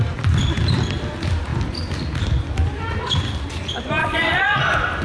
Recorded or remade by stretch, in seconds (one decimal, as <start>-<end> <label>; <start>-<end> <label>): 0.0-4.0 recorded; 4.0-4.6 remade; 4.6-5.0 recorded